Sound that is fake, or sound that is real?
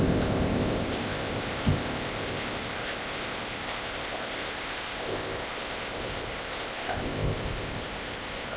fake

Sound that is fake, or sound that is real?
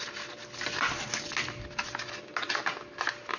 real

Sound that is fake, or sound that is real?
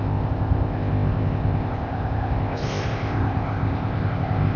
fake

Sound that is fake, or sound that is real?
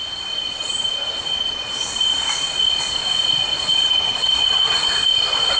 real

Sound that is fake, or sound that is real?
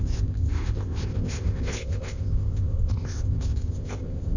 fake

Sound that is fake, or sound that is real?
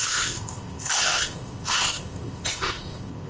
fake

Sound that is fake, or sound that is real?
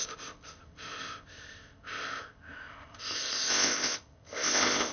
fake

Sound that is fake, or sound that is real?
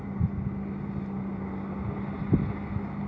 real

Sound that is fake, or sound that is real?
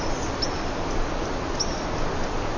real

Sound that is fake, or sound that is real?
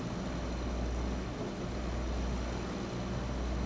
real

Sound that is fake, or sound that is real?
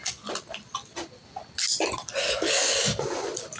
real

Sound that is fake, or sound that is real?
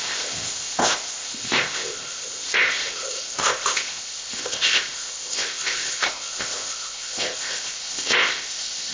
fake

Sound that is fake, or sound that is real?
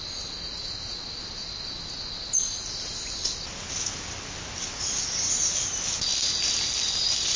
real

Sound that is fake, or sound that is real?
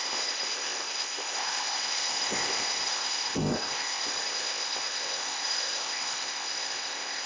fake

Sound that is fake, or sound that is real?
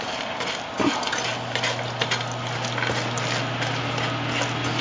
real